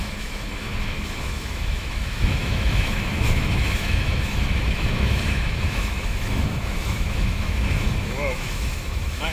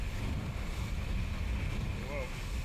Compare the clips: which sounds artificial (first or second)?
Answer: first